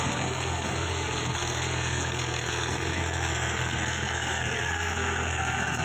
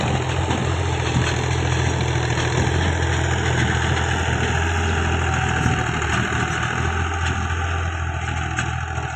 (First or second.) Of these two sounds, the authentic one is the second